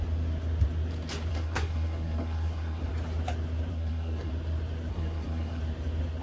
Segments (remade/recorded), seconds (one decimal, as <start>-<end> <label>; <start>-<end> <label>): 0.0-1.3 recorded; 1.3-2.9 remade; 2.9-3.7 recorded; 3.7-4.3 remade; 4.3-4.9 recorded; 4.9-5.6 remade; 5.6-6.2 recorded